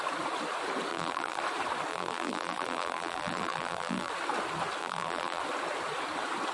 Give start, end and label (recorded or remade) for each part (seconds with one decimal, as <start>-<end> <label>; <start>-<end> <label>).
0.0-0.9 recorded; 0.9-1.4 remade; 1.4-1.9 recorded; 1.9-4.1 remade; 4.1-4.8 recorded; 4.8-5.4 remade; 5.4-6.5 recorded